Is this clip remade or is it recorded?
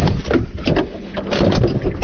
recorded